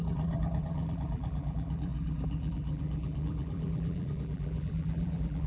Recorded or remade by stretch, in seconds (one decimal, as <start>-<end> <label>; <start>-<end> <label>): 0.0-5.5 remade